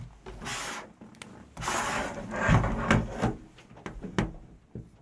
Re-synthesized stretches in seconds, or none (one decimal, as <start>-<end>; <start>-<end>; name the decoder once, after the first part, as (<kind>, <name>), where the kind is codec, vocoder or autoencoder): none